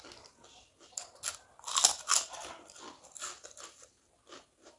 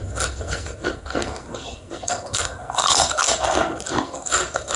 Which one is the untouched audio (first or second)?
first